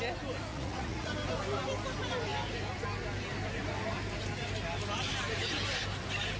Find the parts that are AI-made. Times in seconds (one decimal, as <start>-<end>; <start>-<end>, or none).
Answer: 0.5-1.1